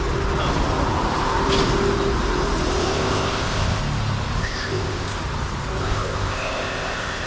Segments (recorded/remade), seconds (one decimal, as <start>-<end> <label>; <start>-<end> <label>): 0.0-2.8 recorded; 2.8-3.8 remade; 3.8-4.4 recorded; 4.4-5.2 remade; 5.2-5.8 recorded; 5.8-7.3 remade